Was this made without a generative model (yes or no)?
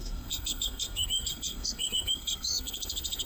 no